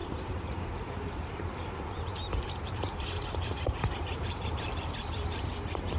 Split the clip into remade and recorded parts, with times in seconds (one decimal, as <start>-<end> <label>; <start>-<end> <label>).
0.0-1.1 recorded; 1.1-6.0 remade